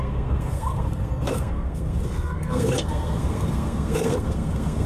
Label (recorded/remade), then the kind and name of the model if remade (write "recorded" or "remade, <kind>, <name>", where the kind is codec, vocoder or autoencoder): remade, codec, SNAC